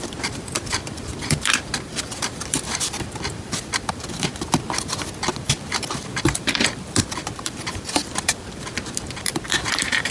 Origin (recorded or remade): remade